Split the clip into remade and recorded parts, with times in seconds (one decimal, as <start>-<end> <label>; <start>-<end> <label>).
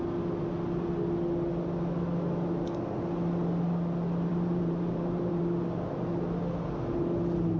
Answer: 0.0-4.3 recorded; 4.3-5.4 remade; 5.4-7.6 recorded